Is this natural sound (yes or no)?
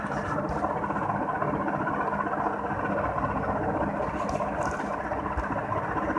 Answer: yes